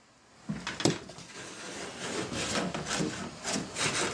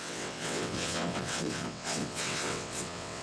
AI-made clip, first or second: second